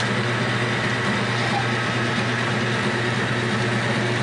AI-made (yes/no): no